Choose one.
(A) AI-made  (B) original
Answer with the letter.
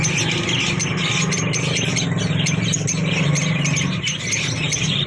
B